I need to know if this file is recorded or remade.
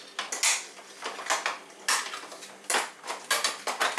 recorded